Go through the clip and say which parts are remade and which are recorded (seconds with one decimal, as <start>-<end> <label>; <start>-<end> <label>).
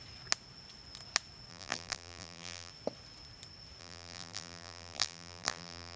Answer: 0.0-1.5 recorded; 1.5-2.7 remade; 2.7-3.8 recorded; 3.8-6.0 remade